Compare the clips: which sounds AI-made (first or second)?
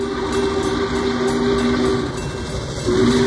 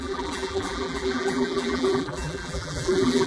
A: second